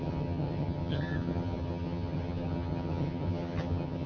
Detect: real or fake fake